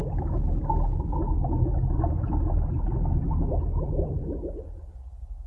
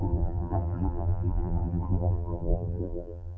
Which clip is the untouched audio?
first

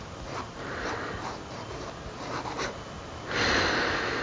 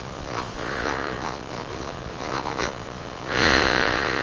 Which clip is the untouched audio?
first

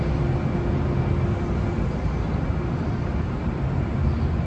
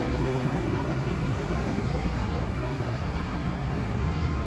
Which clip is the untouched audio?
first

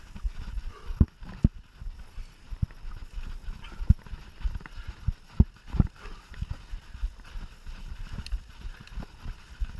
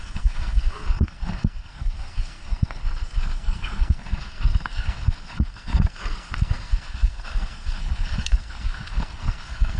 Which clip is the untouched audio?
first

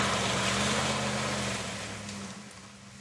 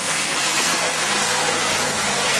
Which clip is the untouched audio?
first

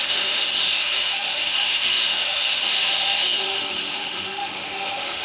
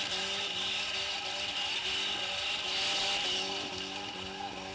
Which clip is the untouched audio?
second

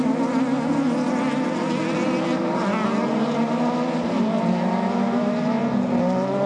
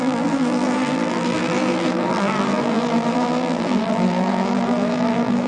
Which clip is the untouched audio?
first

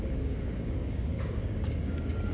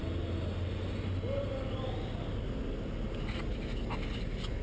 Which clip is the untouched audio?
second